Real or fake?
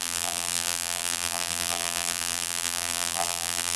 fake